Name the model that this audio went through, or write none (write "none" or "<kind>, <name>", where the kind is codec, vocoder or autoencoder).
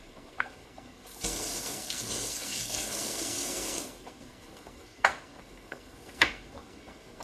codec, SNAC